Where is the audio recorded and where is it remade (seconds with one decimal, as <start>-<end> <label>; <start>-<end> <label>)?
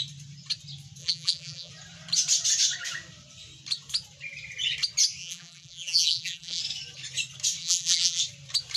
0.0-1.0 recorded; 1.0-1.7 remade; 1.7-5.2 recorded; 5.2-6.6 remade; 6.6-7.6 recorded; 7.6-8.2 remade; 8.2-8.8 recorded